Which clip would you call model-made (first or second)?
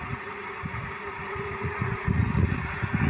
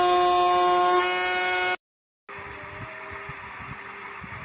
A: first